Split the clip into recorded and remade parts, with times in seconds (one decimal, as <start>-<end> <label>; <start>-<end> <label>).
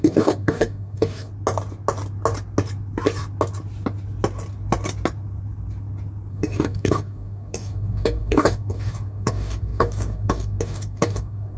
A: 0.0-1.3 remade; 1.3-6.3 recorded; 6.3-11.6 remade